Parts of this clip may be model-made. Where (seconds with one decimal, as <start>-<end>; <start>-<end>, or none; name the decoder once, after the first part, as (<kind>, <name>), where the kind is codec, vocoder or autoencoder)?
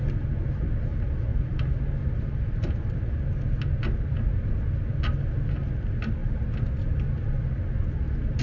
1.3-3.0 (vocoder, BigVGAN v2); 6.2-7.6